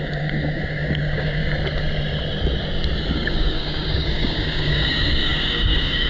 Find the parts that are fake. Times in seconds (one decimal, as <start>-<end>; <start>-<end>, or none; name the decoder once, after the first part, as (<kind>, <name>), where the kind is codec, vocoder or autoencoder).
0.0-1.4 (codec, DAC); 3.1-6.1